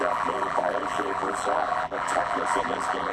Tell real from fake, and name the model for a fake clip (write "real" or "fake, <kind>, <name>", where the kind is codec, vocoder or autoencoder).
fake, vocoder, BigVGAN v2